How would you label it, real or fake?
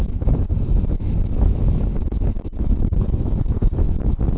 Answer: fake